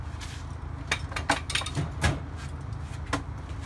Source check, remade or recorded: recorded